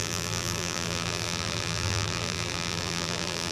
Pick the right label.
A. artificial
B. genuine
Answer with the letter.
A